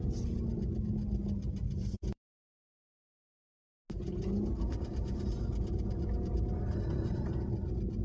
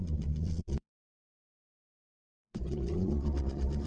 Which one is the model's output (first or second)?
second